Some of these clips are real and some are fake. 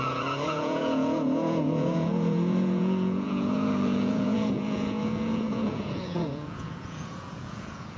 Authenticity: fake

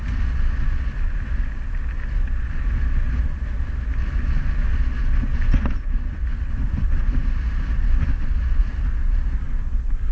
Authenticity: real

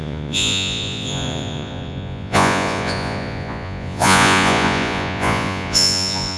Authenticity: fake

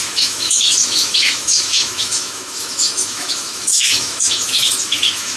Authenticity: fake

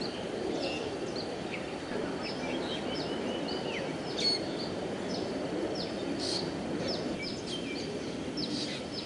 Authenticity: real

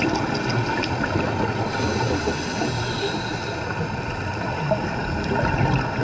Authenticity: real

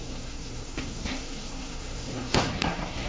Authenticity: fake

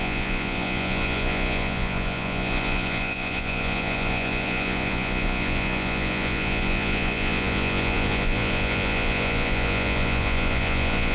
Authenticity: fake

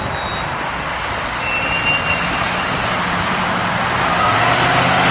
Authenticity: real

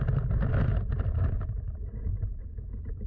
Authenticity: real